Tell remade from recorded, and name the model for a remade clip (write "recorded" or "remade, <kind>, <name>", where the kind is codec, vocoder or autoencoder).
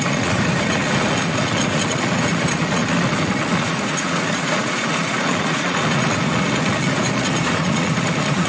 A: remade, vocoder, Vocos